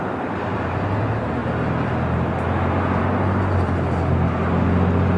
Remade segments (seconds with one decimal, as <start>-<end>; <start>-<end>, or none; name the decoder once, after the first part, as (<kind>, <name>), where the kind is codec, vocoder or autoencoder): none